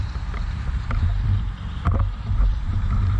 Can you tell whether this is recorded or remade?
remade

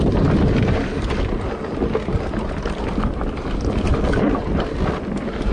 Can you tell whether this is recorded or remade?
recorded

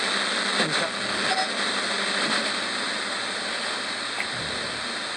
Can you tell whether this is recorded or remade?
recorded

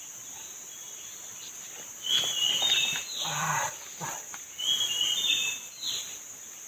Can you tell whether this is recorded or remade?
recorded